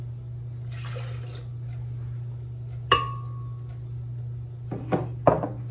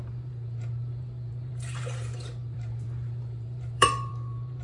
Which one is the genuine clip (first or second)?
first